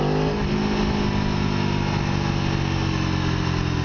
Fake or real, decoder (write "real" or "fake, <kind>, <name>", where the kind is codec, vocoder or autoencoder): real